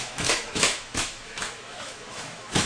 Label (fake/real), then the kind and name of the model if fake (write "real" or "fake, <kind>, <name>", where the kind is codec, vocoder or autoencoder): fake, autoencoder, DAC-VAE